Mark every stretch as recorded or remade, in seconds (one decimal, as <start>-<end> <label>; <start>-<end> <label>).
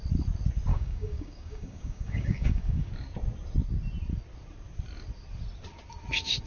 0.0-0.7 recorded; 0.7-2.9 remade; 2.9-6.5 recorded